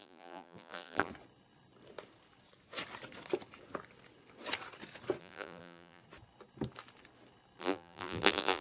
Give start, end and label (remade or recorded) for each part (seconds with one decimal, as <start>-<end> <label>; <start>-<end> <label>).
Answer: 0.0-1.1 remade; 1.1-5.2 recorded; 5.2-6.0 remade; 6.0-7.6 recorded; 7.6-8.6 remade